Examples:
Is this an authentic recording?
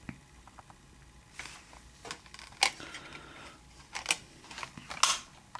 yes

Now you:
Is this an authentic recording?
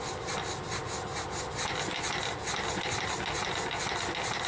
yes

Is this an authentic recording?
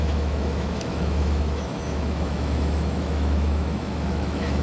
no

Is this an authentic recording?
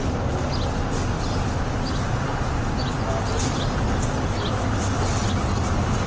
yes